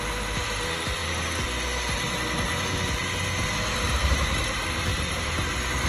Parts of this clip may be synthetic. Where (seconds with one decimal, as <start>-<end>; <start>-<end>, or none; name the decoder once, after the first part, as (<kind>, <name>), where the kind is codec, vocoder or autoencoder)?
4.9-5.5 (vocoder, BigVGAN v2)